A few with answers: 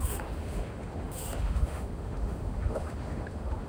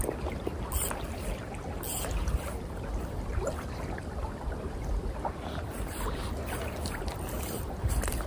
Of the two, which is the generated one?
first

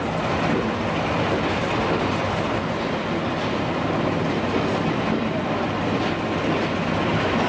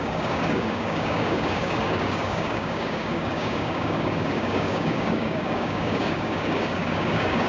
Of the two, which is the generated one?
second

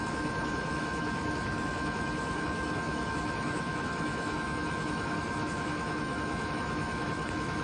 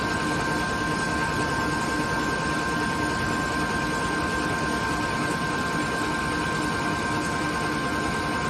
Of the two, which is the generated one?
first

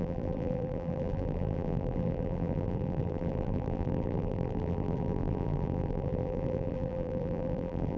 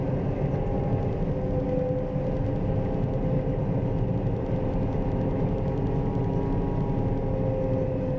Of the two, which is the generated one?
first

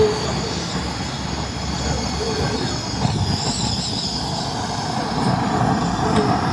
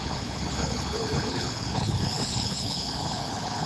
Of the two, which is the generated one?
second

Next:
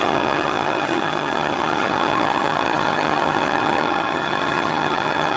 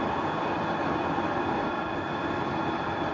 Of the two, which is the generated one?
first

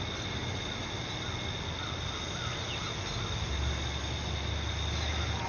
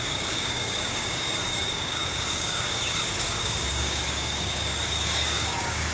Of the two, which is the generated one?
second